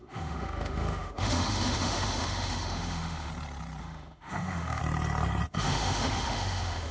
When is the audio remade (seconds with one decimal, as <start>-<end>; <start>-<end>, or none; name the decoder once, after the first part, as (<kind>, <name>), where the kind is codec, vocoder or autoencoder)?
0.0-3.3 (autoencoder, DAC-VAE); 3.8-4.8; 5.5-6.9